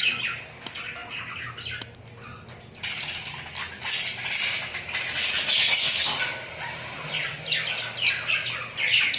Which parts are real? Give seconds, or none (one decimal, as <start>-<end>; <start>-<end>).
0.0-9.2